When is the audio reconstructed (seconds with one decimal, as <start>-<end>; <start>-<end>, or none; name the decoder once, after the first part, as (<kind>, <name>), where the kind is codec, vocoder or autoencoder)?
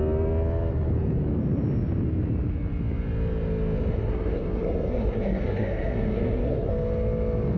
3.9-6.7 (codec, SNAC)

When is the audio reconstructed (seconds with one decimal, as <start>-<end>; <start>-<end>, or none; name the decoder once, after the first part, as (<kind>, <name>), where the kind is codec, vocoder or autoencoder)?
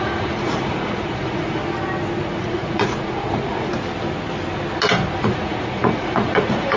0.0-1.6 (vocoder, Vocos); 2.2-3.7; 5.2-6.8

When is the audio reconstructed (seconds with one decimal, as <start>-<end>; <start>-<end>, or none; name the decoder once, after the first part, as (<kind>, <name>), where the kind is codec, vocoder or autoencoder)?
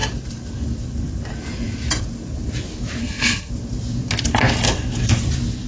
3.0-3.5 (codec, SNAC)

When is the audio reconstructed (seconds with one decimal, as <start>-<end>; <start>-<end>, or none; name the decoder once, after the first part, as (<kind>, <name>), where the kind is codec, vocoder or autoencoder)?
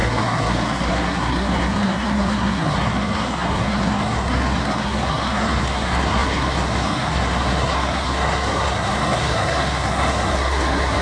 0.0-11.0 (codec, SNAC)